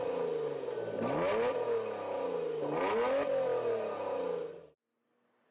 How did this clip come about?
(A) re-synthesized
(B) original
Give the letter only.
B